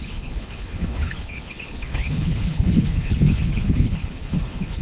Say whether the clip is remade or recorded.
remade